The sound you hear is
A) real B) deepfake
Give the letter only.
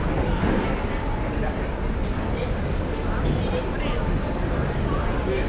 A